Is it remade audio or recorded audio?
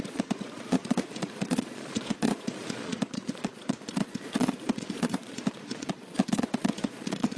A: remade